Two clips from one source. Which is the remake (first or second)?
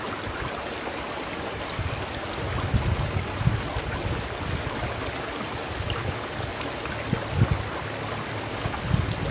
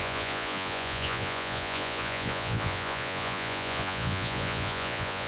second